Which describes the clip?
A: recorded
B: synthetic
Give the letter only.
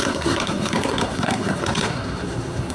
B